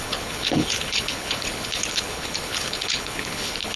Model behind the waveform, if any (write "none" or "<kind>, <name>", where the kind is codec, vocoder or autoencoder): codec, HILCodec